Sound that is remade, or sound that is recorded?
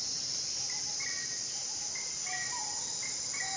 recorded